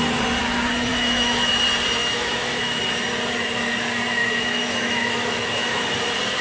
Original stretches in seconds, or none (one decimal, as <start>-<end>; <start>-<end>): 0.0-0.9; 1.5-2.0; 2.8-4.2; 5.8-6.4